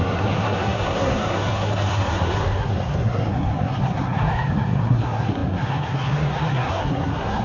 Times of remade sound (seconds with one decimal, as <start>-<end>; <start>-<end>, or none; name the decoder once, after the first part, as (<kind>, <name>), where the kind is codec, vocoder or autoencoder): 0.0-7.4 (codec, SNAC)

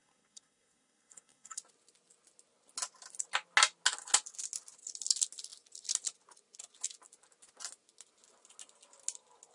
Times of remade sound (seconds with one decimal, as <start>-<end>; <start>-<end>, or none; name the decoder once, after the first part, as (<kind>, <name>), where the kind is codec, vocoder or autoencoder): 0.0-1.6 (codec, SNAC)

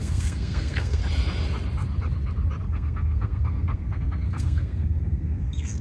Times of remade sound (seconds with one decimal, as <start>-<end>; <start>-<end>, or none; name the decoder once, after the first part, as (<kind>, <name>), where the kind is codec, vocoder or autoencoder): 0.0-1.0 (codec, SNAC); 2.6-5.8